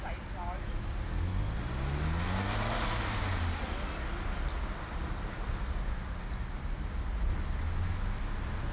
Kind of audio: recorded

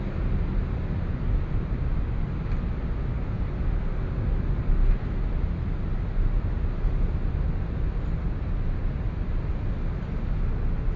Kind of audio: recorded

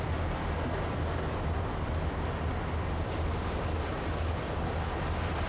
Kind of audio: recorded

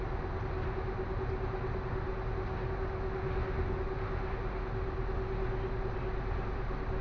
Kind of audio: recorded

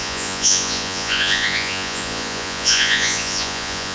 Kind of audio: remade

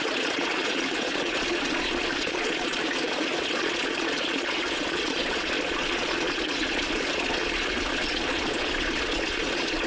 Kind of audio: remade